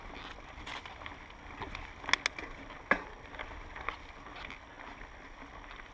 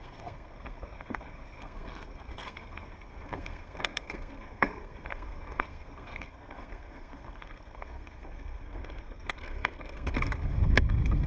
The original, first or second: first